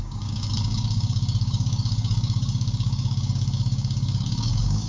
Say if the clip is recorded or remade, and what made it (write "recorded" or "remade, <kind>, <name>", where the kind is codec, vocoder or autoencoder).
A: remade, codec, DAC